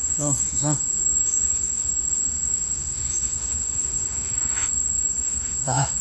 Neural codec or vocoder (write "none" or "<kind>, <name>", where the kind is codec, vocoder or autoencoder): autoencoder, DAC-VAE